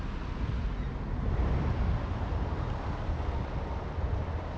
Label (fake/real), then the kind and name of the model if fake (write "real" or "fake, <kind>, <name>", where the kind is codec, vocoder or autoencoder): real